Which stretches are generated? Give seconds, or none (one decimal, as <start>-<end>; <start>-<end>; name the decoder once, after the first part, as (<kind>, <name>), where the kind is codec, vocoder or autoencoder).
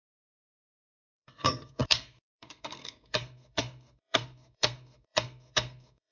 0.0-6.1 (codec, SNAC)